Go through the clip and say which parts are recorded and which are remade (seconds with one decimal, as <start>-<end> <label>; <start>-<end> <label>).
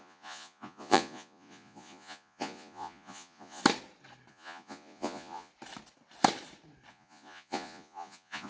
0.0-3.6 remade; 3.6-4.3 recorded; 4.3-5.5 remade; 5.5-6.9 recorded; 6.9-8.5 remade